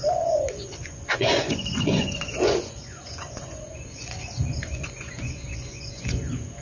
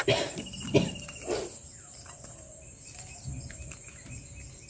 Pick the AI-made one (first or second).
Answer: first